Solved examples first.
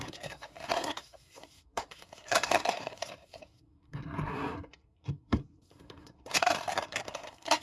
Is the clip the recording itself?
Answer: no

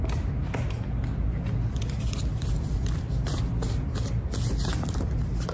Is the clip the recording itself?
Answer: yes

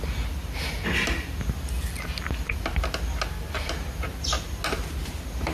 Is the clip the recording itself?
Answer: yes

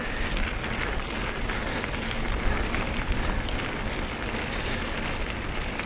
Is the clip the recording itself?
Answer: yes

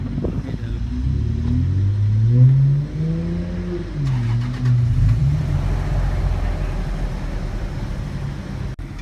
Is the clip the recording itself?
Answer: yes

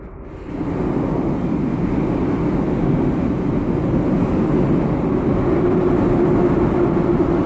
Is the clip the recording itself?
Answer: yes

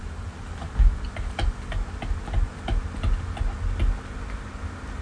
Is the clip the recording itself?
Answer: yes